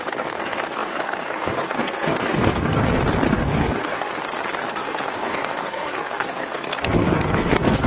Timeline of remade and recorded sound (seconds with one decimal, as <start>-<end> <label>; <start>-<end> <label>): 0.0-2.8 remade; 2.8-3.3 recorded; 3.3-4.1 remade; 4.1-4.7 recorded; 4.7-7.9 remade